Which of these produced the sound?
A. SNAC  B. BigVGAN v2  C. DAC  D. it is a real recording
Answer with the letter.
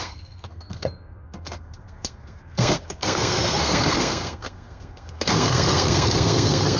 A